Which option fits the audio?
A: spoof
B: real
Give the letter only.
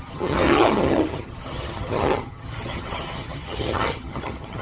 A